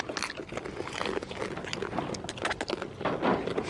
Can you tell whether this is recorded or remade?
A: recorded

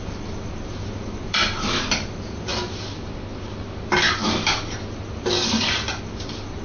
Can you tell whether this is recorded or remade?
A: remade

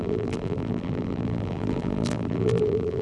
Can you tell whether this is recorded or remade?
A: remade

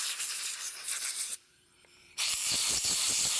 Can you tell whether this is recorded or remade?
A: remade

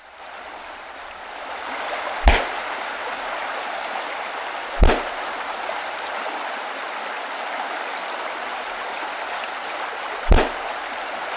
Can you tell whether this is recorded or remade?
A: recorded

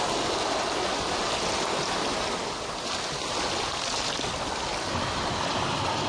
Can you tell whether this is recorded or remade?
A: recorded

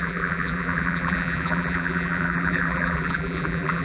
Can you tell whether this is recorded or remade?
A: remade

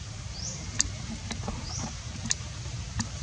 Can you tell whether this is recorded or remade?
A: remade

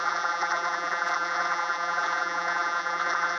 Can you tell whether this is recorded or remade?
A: remade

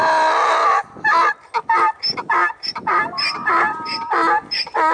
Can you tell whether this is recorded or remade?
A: recorded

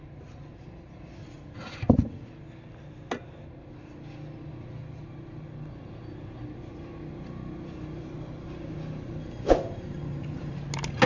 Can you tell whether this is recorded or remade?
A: recorded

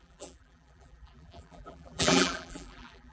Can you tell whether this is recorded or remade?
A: remade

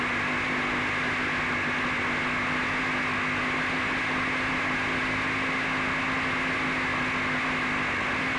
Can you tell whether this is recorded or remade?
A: recorded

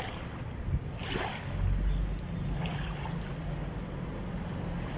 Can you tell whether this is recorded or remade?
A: recorded